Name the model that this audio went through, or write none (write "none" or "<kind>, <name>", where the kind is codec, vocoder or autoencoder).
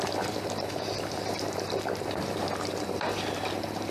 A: vocoder, BigVGAN v2